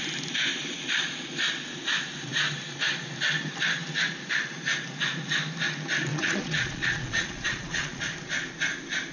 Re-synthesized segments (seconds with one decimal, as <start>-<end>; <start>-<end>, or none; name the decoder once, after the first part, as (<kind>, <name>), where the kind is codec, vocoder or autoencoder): 6.1-8.0 (vocoder, Vocos)